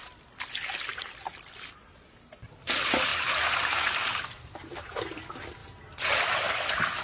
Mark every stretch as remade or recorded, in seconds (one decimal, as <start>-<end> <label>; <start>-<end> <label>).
0.0-3.1 recorded; 3.1-4.5 remade; 4.5-5.6 recorded; 5.6-6.2 remade; 6.2-7.0 recorded